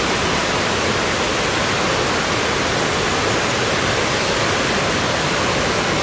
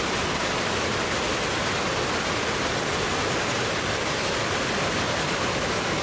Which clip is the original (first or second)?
first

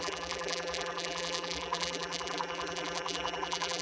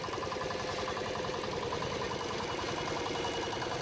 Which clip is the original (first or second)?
second